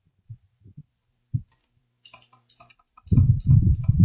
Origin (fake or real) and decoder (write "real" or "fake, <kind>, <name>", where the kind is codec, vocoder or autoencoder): fake, vocoder, BigVGAN v2